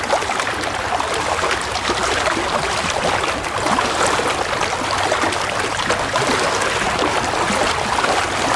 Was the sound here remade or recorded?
recorded